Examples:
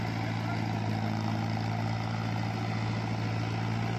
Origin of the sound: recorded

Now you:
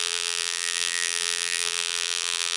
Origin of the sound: remade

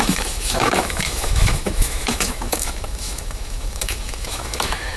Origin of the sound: remade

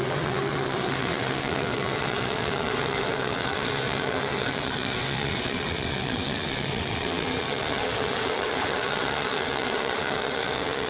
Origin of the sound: remade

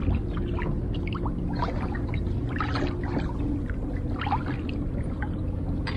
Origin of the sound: recorded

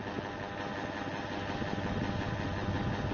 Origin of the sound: recorded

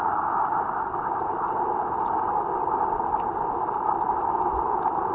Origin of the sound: recorded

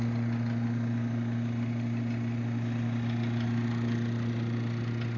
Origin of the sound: recorded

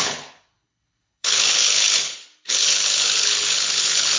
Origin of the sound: remade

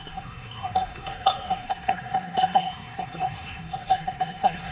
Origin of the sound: remade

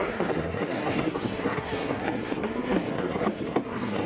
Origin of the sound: remade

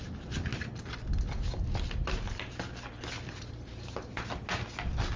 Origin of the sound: recorded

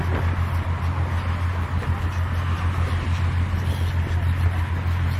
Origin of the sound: recorded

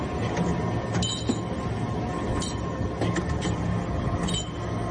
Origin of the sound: recorded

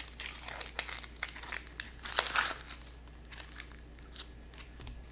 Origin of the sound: recorded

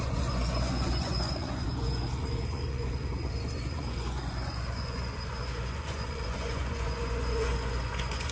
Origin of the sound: remade